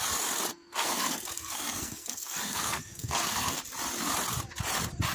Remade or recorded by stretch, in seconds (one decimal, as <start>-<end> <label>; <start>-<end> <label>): 0.0-0.5 recorded; 0.5-3.6 remade; 3.6-5.1 recorded